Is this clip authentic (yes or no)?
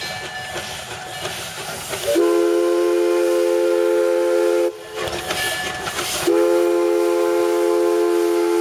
yes